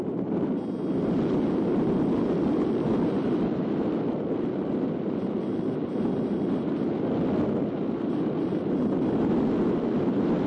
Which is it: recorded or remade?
recorded